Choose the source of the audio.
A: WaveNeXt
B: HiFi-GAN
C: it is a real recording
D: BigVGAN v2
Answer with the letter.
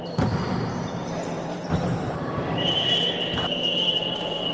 D